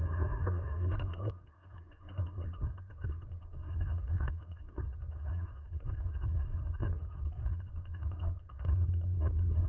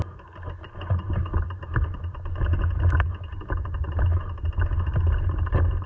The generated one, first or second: first